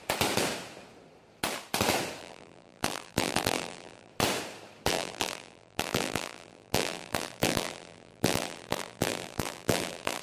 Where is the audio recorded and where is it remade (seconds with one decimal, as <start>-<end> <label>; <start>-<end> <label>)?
0.0-2.2 recorded; 2.2-4.1 remade; 4.1-4.9 recorded; 4.9-10.2 remade